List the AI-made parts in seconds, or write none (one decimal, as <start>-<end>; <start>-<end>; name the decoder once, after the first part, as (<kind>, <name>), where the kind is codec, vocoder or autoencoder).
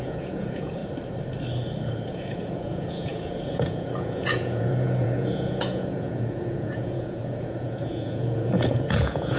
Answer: 0.0-0.8 (vocoder, Vocos); 1.9-9.4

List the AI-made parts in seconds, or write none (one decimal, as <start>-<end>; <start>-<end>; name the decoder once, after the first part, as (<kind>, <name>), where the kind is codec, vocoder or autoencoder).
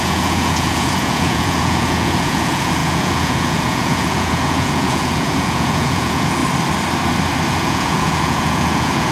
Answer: 0.0-6.4 (vocoder, Vocos); 7.5-9.1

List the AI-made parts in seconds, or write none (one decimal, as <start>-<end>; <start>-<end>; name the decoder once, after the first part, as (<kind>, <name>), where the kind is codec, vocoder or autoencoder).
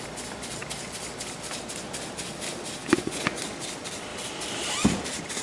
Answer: 2.8-3.4 (vocoder, Vocos)